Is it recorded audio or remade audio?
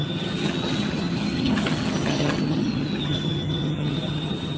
remade